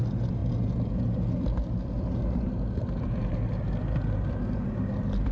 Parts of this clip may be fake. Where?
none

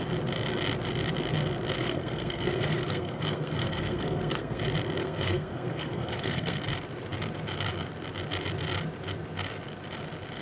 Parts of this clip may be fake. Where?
1.8-4.6 (codec, SNAC); 5.0-6.6

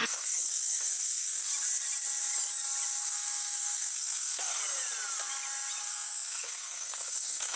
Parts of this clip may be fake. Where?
0.0-1.5 (codec, SNAC); 3.0-4.6; 5.8-7.6

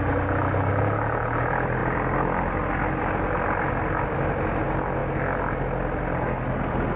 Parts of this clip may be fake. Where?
none

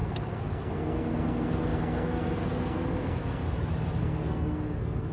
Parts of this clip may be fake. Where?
0.0-3.4 (codec, SNAC); 4.0-5.1

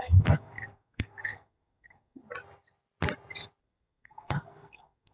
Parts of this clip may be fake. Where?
0.0-2.2 (codec, SNAC); 3.6-5.1

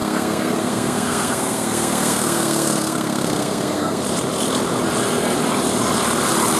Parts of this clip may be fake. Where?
0.0-4.0 (codec, SNAC)